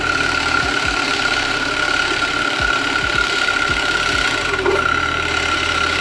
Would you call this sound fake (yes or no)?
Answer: yes